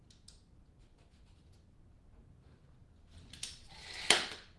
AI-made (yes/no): no